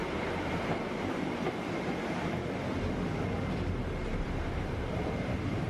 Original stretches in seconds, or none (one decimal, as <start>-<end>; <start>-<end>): 2.4-4.2